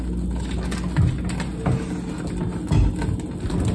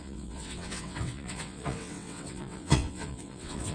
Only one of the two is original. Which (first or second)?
first